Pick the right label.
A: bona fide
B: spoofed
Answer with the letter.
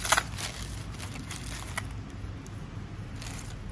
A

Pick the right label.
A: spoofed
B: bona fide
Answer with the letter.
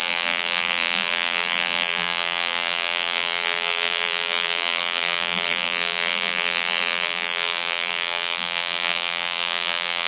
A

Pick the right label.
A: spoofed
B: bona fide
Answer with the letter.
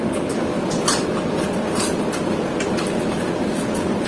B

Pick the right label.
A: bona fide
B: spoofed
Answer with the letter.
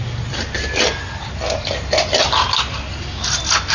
A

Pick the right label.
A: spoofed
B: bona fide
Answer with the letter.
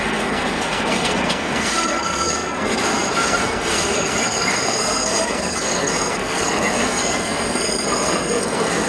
A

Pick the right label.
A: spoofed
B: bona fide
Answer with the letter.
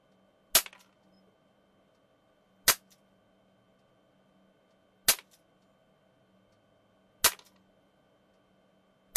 B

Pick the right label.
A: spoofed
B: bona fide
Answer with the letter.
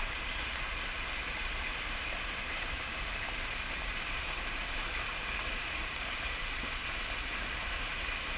A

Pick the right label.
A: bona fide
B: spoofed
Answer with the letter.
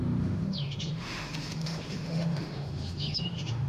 B